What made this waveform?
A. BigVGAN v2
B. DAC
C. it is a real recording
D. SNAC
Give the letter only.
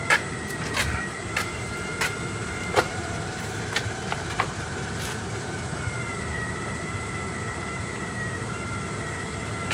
A